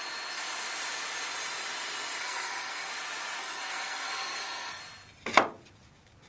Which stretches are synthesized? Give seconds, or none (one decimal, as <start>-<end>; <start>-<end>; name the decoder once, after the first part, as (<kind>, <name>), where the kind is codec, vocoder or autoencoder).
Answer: 2.2-2.9 (codec, SNAC); 3.4-4.8